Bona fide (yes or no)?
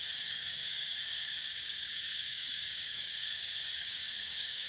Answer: no